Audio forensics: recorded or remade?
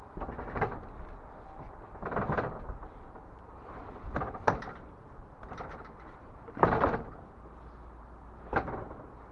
recorded